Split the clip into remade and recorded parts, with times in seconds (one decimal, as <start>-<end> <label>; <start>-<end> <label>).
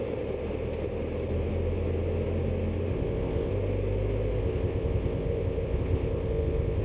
0.0-2.9 recorded; 2.9-3.5 remade; 3.5-4.4 recorded; 4.4-6.8 remade